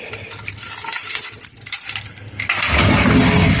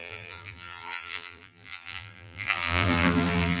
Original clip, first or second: first